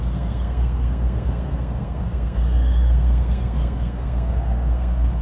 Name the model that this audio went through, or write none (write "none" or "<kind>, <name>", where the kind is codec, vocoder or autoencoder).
codec, SNAC